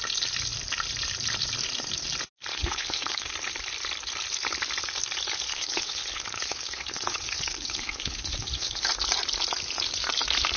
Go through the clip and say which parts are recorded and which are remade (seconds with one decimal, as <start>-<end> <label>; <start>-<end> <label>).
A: 0.0-2.5 recorded; 2.5-3.3 remade; 3.3-5.5 recorded; 5.5-8.9 remade; 8.9-10.6 recorded